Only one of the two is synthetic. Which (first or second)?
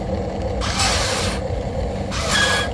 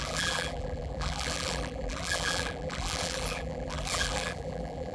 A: second